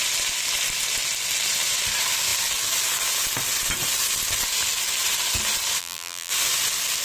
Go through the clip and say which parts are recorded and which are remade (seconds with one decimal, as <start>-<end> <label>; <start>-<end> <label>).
0.0-5.8 recorded; 5.8-6.3 remade; 6.3-7.0 recorded

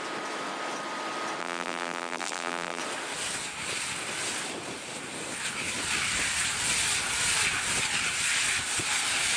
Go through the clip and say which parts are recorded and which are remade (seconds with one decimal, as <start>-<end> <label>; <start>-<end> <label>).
0.0-1.4 recorded; 1.4-2.8 remade; 2.8-9.4 recorded

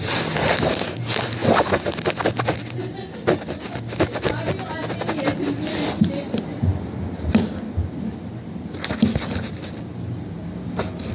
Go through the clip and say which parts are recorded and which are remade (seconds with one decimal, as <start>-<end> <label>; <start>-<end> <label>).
0.0-11.1 recorded

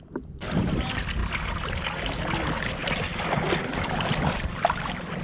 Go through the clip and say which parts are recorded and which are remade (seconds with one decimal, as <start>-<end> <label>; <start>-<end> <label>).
0.0-1.2 remade; 1.2-4.3 recorded; 4.3-5.2 remade

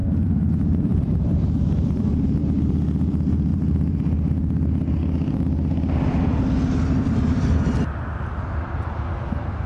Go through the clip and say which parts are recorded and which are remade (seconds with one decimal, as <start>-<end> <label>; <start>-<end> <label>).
0.0-2.4 remade; 2.4-3.5 recorded; 3.5-5.0 remade; 5.0-9.7 recorded